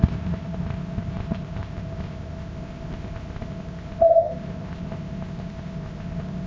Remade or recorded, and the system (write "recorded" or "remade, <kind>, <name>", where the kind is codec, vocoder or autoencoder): remade, codec, ZipCodec